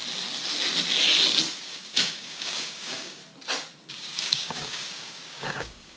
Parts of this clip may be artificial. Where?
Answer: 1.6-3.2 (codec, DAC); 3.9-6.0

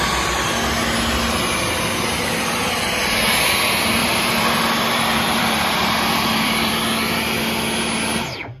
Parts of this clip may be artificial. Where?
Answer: 4.0-6.7 (vocoder, BigVGAN v2)

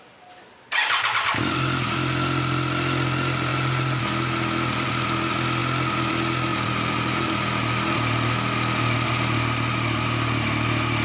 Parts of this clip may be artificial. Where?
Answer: 3.5-4.0 (vocoder, BigVGAN v2); 6.5-7.4

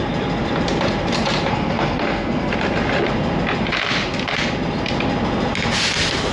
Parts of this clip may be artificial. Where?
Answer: 1.5-2.5 (codec, SNAC)

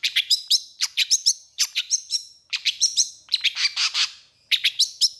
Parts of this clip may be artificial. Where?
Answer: 0.0-3.1 (vocoder, BigVGAN v2)